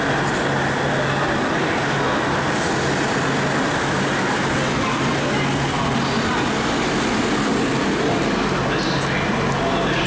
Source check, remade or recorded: recorded